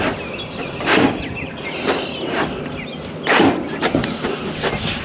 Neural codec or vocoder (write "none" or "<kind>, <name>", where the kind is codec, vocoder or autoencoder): none